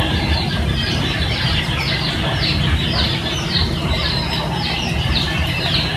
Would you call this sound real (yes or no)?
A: no